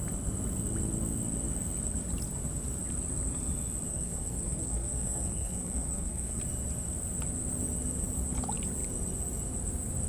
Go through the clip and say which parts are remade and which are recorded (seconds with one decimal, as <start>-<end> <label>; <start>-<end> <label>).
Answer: 0.0-3.9 recorded; 3.9-6.4 remade; 6.4-10.1 recorded